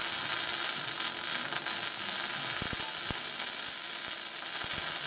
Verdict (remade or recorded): recorded